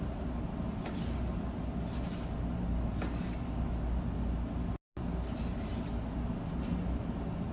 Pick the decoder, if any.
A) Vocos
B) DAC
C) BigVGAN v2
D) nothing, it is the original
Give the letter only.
D